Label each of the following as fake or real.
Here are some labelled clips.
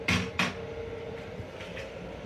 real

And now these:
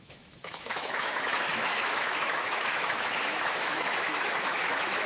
fake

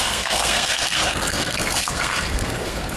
fake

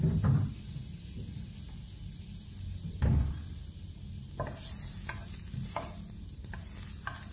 real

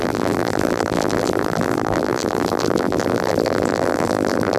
fake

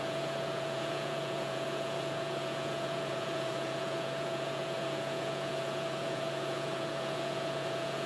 fake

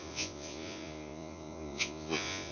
fake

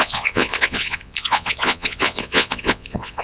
fake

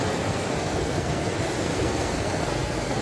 fake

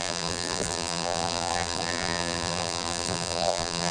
fake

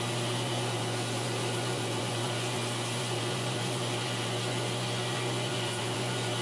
fake